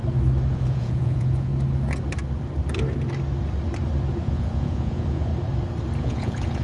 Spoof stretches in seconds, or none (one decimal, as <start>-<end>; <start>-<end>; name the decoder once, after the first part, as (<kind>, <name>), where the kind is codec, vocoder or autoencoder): 0.5-1.5 (vocoder, Vocos); 4.2-5.3; 6.0-6.6

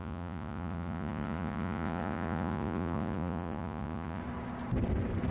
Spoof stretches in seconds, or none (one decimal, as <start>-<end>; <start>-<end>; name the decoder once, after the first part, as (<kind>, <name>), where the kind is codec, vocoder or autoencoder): 0.0-4.2 (vocoder, Vocos)

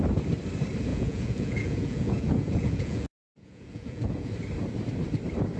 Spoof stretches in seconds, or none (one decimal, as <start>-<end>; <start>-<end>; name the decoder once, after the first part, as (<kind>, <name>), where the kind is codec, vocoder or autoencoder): 0.9-4.3 (vocoder, Vocos)

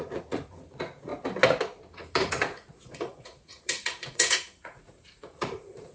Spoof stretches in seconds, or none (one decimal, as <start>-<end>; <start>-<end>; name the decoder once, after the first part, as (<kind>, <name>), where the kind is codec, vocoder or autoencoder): 0.0-1.1 (vocoder, Vocos); 1.9-5.9

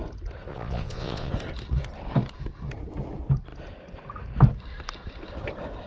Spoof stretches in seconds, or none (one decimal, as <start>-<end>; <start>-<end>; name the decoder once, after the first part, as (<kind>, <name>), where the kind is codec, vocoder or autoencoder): 0.5-1.3 (vocoder, Vocos)

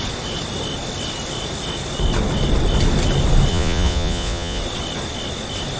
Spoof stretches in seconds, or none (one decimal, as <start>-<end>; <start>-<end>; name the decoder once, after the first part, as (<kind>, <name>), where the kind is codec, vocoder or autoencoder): 3.5-4.6 (vocoder, Vocos)